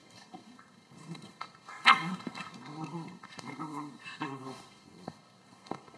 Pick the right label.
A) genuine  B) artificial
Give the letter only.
B